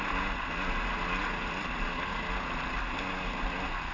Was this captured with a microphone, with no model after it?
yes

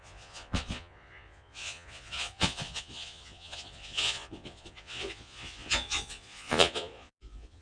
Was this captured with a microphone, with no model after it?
no